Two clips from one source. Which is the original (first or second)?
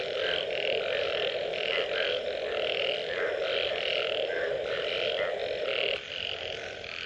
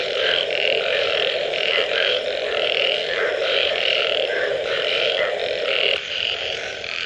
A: first